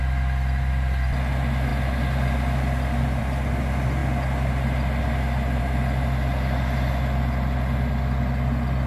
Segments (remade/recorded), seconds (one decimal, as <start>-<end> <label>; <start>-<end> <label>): 0.0-8.9 recorded